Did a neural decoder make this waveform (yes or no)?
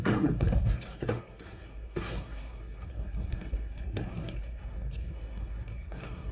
yes